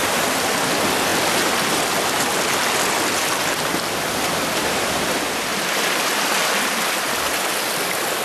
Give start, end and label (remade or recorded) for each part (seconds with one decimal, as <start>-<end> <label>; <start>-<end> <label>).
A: 0.0-8.2 recorded